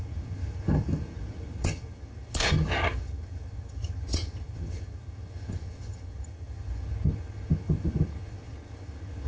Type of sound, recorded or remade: remade